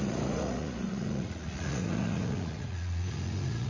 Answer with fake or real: fake